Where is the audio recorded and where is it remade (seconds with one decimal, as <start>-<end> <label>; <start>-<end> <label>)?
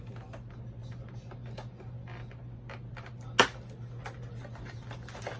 0.0-5.4 recorded